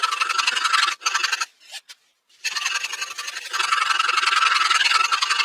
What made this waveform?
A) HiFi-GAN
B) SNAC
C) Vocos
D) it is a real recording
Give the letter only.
D